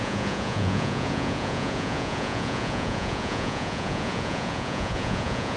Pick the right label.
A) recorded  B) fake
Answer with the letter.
B